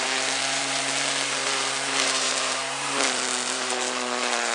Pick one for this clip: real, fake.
fake